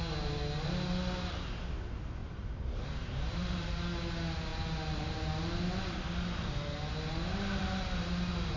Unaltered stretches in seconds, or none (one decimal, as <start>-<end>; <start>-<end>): 0.0-2.2; 3.8-8.6